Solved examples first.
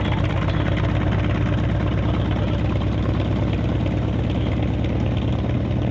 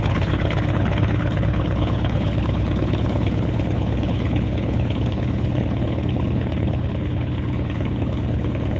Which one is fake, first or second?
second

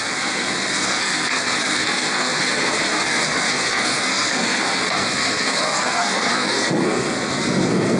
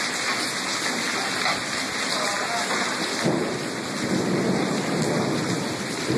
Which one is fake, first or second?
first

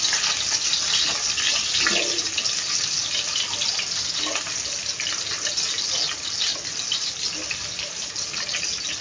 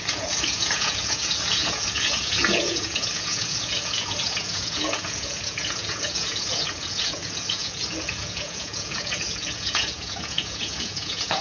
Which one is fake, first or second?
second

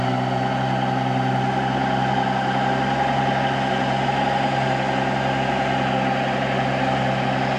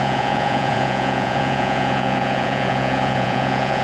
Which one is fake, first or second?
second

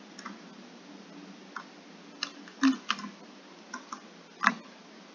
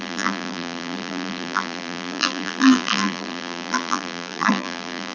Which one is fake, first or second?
second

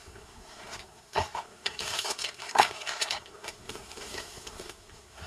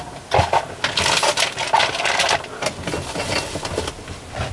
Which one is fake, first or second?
first